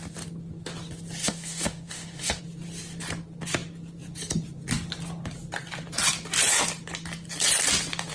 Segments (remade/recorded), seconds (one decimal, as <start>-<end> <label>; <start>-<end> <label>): 0.0-1.2 recorded; 1.2-2.4 remade; 2.4-8.1 recorded